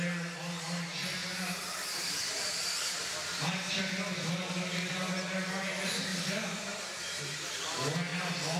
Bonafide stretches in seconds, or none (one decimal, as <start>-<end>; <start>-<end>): 0.0-1.2; 3.7-6.1; 6.8-8.6